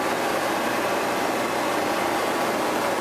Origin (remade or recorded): recorded